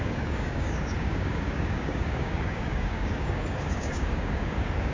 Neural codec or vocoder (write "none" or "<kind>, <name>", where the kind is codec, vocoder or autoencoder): codec, DAC